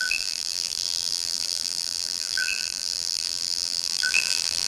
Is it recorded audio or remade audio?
remade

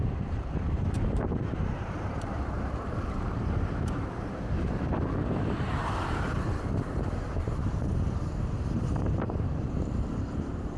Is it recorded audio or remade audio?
remade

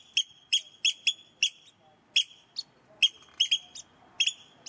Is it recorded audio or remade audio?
recorded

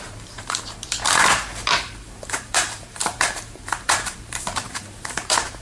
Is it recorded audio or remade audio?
remade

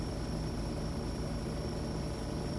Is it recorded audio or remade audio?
remade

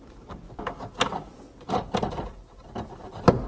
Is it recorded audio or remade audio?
recorded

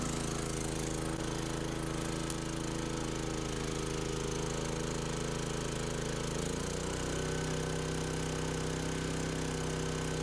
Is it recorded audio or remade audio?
recorded